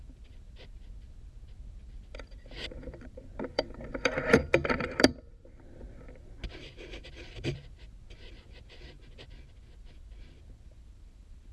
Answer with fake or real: fake